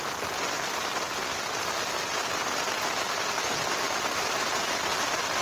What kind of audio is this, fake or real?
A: real